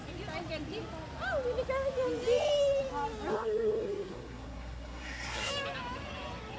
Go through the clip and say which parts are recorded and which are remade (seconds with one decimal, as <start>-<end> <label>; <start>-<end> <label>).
0.0-3.3 recorded; 3.3-5.5 remade; 5.5-6.6 recorded